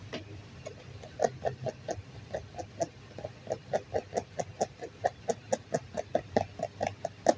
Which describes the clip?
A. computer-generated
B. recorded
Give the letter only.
B